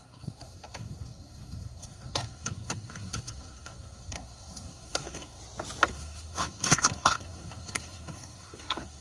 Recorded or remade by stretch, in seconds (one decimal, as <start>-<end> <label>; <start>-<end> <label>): 0.0-5.4 remade; 5.4-5.9 recorded; 5.9-9.0 remade